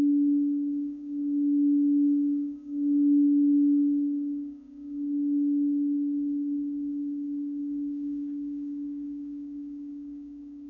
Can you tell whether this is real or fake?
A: fake